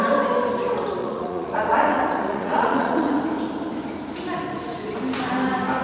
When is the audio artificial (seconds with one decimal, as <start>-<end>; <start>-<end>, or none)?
1.0-3.2